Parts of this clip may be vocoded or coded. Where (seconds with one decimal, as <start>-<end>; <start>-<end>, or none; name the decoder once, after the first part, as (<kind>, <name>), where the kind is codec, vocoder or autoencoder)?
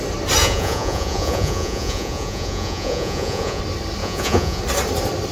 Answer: 0.4-3.6 (vocoder, Vocos); 4.0-4.6